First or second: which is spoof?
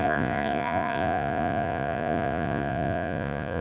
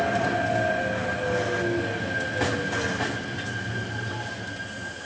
first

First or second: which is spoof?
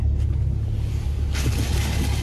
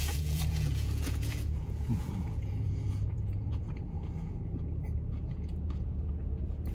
second